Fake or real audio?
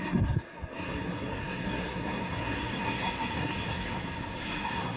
fake